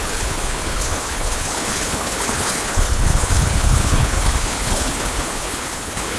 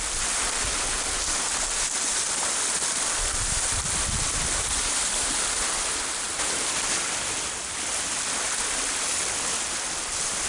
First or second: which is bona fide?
second